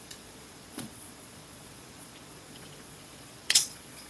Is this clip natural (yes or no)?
no